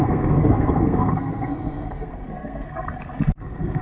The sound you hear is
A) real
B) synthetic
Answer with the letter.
B